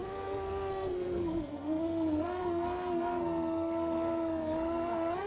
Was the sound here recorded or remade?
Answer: remade